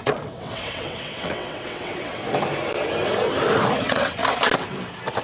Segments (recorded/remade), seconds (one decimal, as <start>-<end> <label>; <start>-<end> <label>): 0.0-2.2 remade; 2.2-3.8 recorded; 3.8-4.2 remade; 4.2-5.2 recorded